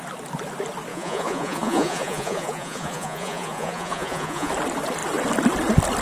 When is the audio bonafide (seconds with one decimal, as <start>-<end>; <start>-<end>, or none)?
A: 0.0-0.9; 4.5-6.0